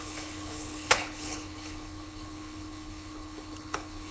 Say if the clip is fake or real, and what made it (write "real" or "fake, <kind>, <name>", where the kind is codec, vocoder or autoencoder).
fake, codec, HILCodec